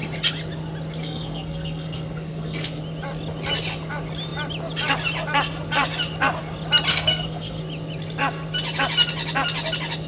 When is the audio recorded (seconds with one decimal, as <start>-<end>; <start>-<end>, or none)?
0.0-1.0; 2.8-6.9; 7.6-10.1